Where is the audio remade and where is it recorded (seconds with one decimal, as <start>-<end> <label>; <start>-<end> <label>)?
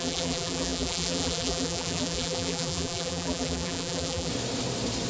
0.0-4.3 remade; 4.3-5.1 recorded